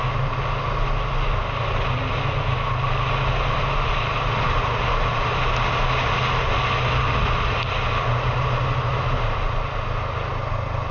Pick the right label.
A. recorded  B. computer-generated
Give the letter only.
A